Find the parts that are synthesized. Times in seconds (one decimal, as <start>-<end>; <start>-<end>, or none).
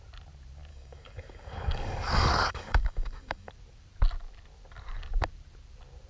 0.7-3.5